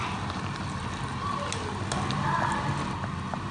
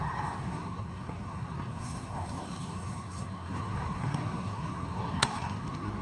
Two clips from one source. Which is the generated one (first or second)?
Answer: second